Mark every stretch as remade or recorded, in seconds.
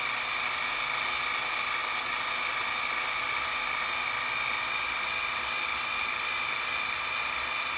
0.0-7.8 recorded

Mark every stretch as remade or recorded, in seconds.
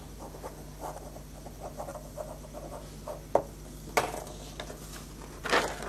0.0-5.9 recorded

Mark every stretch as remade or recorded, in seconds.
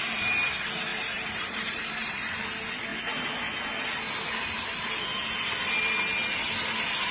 0.0-0.9 recorded; 0.9-2.3 remade; 2.3-7.1 recorded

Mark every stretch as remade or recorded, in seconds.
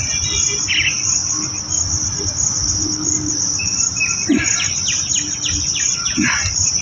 0.0-2.6 recorded; 2.6-3.5 remade; 3.5-6.8 recorded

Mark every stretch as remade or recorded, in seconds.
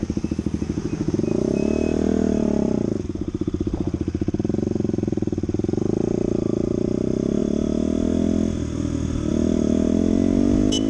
0.0-10.9 recorded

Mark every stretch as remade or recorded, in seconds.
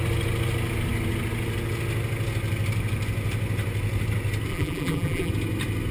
0.0-4.5 recorded; 4.5-5.3 remade; 5.3-5.9 recorded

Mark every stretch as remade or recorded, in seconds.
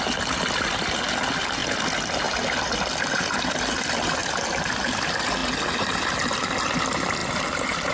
0.0-1.6 recorded; 1.6-2.9 remade; 2.9-7.2 recorded; 7.2-7.9 remade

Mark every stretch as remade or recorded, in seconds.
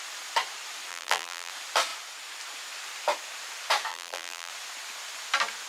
0.0-0.9 recorded; 0.9-1.5 remade; 1.5-3.9 recorded; 3.9-4.5 remade; 4.5-5.7 recorded